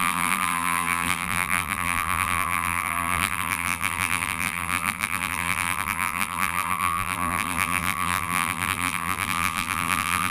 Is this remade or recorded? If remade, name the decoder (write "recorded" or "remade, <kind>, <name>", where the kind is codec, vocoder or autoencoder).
remade, vocoder, BigVGAN v2